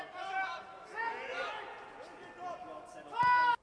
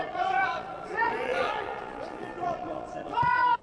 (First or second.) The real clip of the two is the first